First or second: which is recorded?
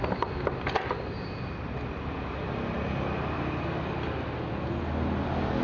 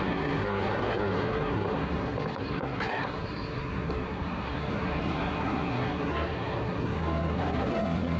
first